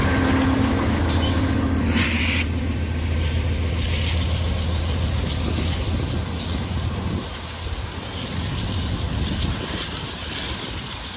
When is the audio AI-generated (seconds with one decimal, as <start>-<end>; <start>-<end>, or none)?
none